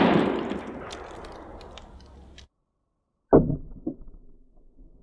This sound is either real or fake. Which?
real